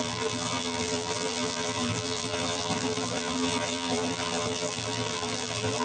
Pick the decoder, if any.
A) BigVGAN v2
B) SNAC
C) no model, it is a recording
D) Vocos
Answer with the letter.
A